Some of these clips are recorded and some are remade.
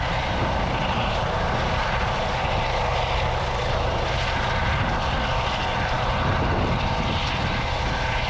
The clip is recorded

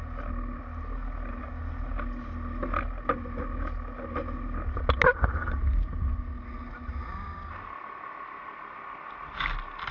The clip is recorded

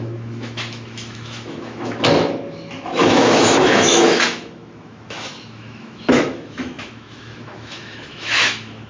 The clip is remade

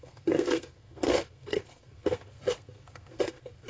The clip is remade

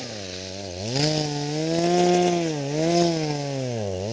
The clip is recorded